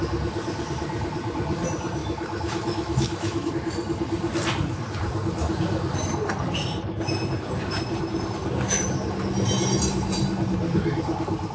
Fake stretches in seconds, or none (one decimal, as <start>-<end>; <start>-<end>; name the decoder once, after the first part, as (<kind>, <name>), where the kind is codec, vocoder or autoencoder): 2.0-3.5 (autoencoder, DAC-VAE)